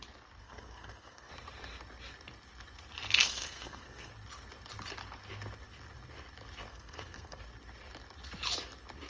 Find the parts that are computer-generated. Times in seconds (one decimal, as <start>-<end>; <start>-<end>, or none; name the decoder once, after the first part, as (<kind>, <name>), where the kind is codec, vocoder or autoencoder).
0.4-1.3 (codec, SNAC); 3.2-4.1; 6.7-7.4